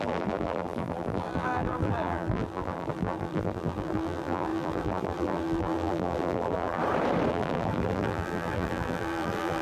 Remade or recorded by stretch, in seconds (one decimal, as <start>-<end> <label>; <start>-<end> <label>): 0.0-6.8 remade; 6.8-7.3 recorded; 7.3-9.6 remade